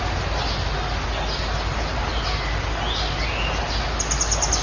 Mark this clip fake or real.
real